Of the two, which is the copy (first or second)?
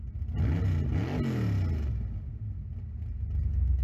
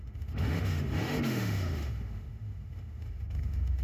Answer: second